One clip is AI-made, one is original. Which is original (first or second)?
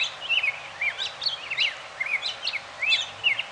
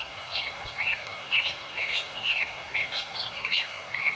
first